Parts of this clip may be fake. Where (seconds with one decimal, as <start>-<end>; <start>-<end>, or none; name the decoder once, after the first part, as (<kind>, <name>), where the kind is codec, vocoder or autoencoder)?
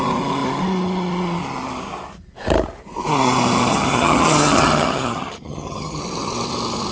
3.7-6.0 (vocoder, HiFi-GAN)